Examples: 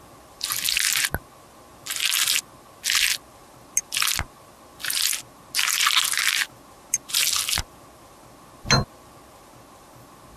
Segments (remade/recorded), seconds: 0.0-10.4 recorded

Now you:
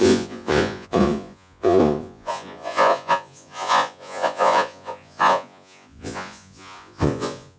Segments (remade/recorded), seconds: 0.0-7.6 remade

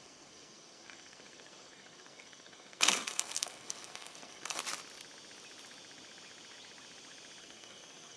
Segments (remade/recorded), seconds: 0.0-4.6 remade; 4.6-7.4 recorded; 7.4-8.2 remade

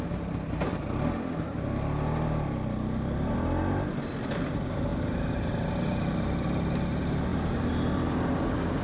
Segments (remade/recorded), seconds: 0.0-8.8 recorded

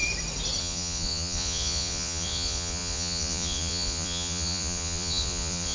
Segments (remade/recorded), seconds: 0.0-0.6 recorded; 0.6-5.7 remade

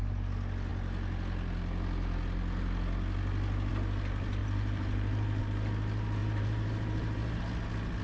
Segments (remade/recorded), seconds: 0.0-4.4 recorded; 4.4-5.4 remade; 5.4-6.2 recorded; 6.2-7.4 remade; 7.4-8.0 recorded

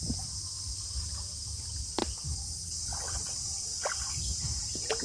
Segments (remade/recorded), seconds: 0.0-2.0 remade; 2.0-2.9 recorded; 2.9-3.7 remade; 3.7-5.0 recorded

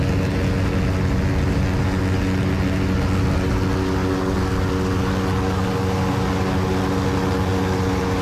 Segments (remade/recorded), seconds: 0.0-8.2 recorded